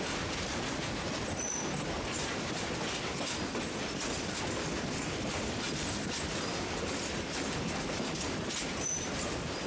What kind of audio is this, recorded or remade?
recorded